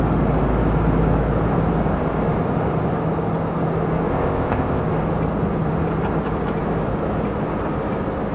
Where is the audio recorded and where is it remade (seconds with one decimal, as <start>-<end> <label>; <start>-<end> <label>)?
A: 0.0-4.1 recorded; 4.1-4.8 remade; 4.8-8.3 recorded